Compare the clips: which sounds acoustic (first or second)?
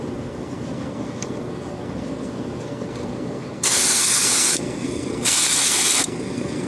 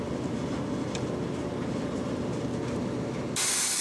second